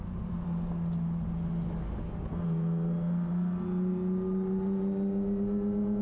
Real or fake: real